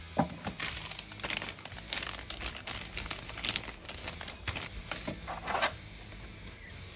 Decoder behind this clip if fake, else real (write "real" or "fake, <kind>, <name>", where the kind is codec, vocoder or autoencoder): real